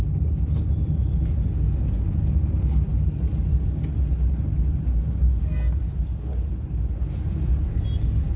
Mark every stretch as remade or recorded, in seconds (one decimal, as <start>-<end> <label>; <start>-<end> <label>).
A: 0.0-8.4 recorded